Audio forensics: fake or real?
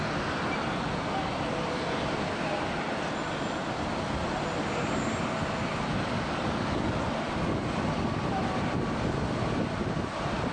real